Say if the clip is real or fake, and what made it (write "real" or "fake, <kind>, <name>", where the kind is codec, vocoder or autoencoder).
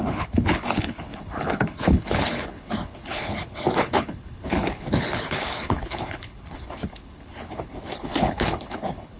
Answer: fake, codec, HILCodec